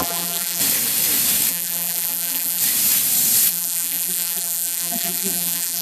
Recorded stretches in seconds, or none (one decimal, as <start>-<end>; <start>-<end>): 0.6-1.5; 2.6-3.5